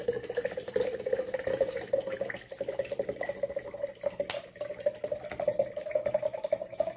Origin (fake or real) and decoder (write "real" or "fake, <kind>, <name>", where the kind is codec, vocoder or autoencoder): real